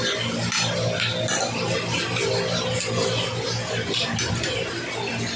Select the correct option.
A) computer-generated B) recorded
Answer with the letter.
B